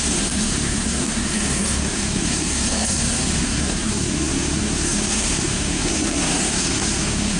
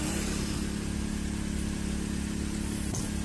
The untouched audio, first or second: second